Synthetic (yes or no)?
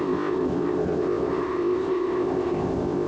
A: yes